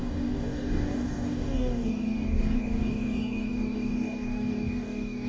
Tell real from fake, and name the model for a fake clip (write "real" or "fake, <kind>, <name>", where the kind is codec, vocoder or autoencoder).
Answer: fake, codec, DAC